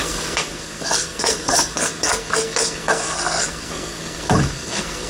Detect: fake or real fake